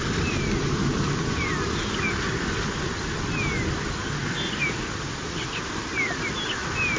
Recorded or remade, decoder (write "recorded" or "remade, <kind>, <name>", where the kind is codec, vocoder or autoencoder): recorded